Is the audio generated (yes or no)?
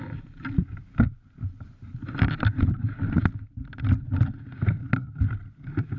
no